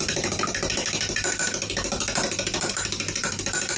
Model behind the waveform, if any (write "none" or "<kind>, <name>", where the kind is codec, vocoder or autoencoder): vocoder, BigVGAN v2